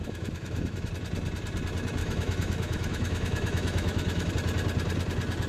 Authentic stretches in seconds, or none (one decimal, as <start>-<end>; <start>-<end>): 0.9-2.0; 4.3-5.5